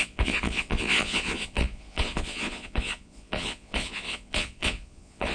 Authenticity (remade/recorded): remade